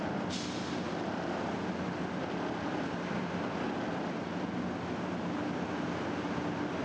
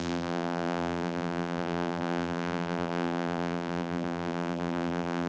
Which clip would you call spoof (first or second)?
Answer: second